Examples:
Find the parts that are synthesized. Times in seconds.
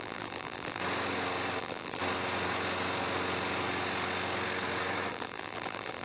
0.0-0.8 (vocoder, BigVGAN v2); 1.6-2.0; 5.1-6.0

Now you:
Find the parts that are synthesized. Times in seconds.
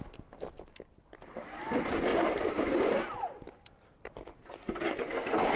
2.1-5.6 (vocoder, BigVGAN v2)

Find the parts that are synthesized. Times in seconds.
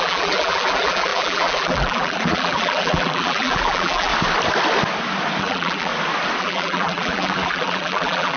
0.0-4.1 (vocoder, BigVGAN v2); 5.4-5.9; 6.4-8.4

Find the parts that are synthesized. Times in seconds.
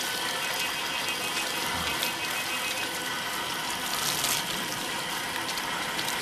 none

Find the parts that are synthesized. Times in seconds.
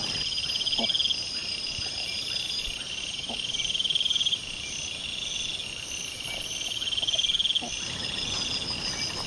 1.4-4.4 (vocoder, BigVGAN v2)